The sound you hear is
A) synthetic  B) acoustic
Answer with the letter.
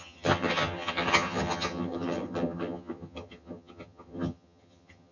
A